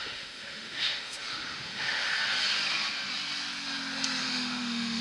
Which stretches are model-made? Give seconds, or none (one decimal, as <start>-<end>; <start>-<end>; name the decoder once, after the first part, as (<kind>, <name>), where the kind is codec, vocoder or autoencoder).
0.0-2.1 (autoencoder, DAC-VAE); 4.2-5.0

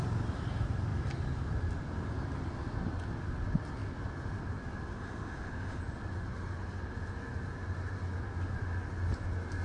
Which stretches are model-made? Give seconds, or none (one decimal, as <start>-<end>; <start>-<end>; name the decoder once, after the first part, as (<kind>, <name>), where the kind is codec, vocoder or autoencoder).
4.9-5.8 (autoencoder, DAC-VAE)

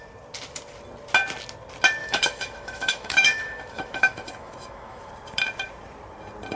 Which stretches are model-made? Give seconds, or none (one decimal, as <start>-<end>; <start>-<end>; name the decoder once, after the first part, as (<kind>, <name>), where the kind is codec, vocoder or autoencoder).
2.0-5.1 (autoencoder, DAC-VAE)

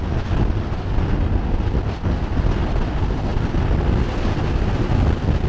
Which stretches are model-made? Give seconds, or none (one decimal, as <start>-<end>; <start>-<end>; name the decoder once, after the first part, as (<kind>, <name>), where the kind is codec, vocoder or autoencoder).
none

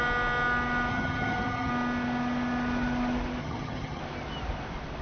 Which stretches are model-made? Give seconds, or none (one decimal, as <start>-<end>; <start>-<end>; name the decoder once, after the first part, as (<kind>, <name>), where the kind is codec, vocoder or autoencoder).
0.9-1.7 (vocoder, HiFi-GAN); 3.4-4.0

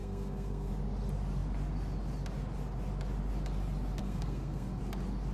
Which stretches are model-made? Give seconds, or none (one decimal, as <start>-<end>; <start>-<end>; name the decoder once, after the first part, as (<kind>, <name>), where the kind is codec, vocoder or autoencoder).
0.0-0.7 (codec, SNAC); 4.0-4.8

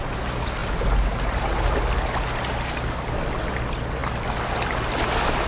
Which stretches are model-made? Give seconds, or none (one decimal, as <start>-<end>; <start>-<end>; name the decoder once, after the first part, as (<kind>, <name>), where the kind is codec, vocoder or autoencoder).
none